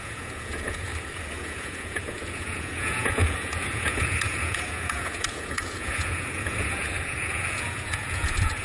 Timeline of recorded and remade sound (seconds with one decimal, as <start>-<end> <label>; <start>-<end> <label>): 0.0-0.9 remade; 0.9-1.4 recorded; 1.4-8.6 remade